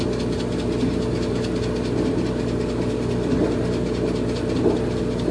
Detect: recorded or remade recorded